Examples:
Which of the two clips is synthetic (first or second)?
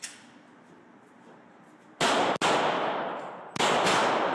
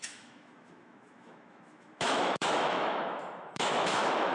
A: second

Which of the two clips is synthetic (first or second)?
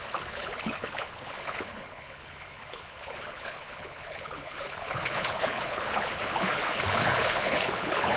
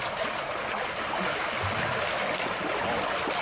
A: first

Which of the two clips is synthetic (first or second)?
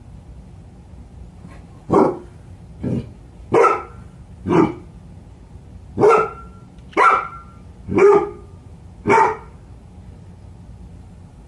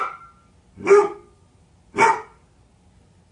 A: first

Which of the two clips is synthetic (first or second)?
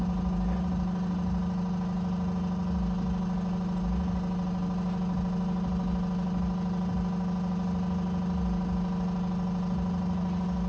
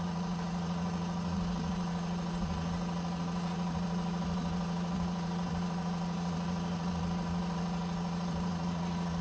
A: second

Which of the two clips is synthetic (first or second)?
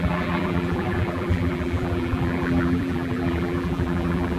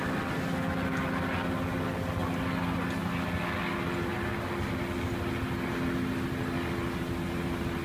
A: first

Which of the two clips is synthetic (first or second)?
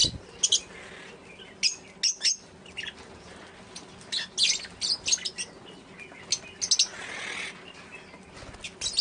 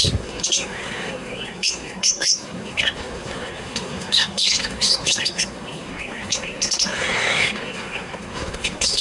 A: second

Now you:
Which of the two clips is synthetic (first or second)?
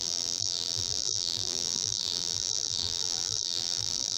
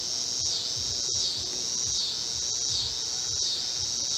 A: first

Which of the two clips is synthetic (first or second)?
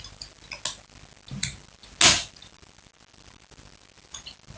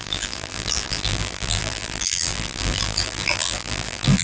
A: second